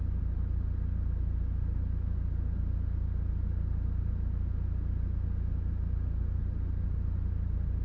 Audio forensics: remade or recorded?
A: recorded